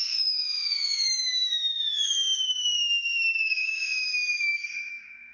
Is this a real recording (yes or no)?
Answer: no